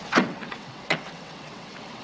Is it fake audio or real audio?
fake